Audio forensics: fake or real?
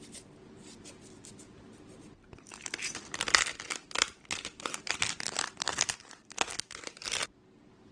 real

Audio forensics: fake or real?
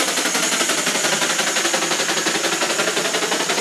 real